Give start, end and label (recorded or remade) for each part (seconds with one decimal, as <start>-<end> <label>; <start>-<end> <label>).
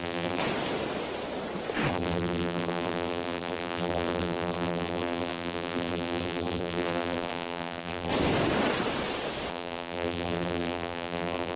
0.0-0.4 remade; 0.4-1.9 recorded; 1.9-8.1 remade; 8.1-9.5 recorded; 9.5-11.6 remade